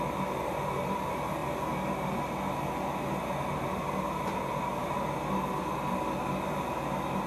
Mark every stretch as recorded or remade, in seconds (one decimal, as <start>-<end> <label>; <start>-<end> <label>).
0.0-7.3 recorded